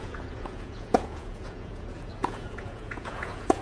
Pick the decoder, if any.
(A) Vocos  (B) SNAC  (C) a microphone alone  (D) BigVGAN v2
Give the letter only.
A